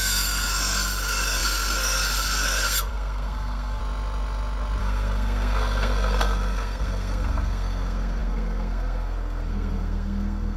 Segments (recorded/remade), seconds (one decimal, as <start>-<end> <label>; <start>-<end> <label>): 0.0-3.8 remade; 3.8-4.8 recorded; 4.8-10.6 remade